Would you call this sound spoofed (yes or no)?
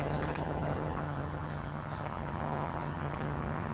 yes